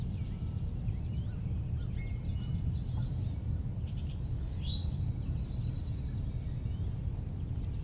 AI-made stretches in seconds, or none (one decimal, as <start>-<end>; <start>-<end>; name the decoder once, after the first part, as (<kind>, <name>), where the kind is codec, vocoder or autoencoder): none